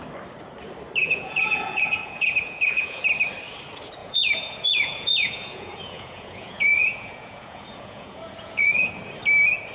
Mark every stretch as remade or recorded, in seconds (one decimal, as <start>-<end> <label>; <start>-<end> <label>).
0.0-1.0 recorded; 1.0-3.0 remade; 3.0-4.0 recorded; 4.0-9.0 remade; 9.0-9.7 recorded